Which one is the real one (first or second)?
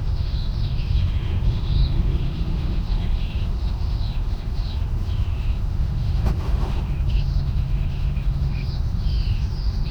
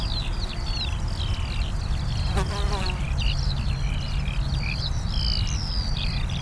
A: second